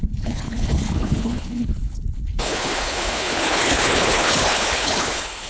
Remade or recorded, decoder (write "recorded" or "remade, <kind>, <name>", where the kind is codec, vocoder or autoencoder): remade, codec, HILCodec